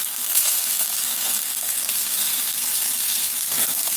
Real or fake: fake